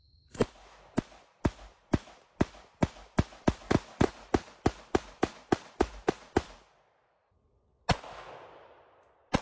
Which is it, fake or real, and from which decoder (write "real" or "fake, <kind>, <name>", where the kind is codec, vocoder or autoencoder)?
real